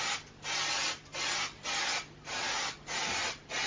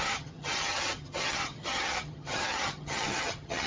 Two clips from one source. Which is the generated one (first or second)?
second